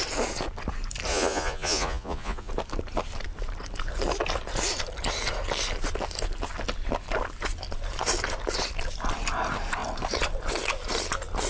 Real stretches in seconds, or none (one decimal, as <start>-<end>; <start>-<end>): 0.0-1.1; 2.5-11.5